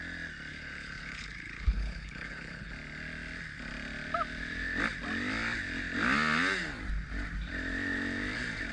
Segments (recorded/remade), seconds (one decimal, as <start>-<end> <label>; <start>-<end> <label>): 0.0-0.5 recorded; 0.5-2.7 remade; 2.7-8.7 recorded